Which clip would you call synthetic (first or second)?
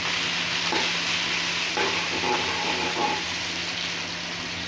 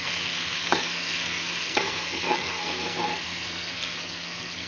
second